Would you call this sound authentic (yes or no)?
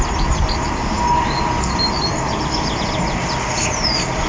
yes